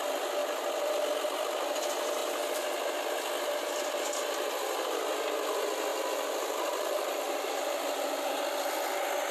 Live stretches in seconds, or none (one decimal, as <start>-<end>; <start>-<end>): 0.0-5.9; 8.3-9.3